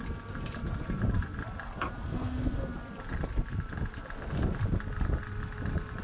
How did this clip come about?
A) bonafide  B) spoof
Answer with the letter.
A